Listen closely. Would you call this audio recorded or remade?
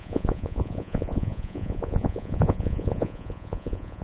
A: remade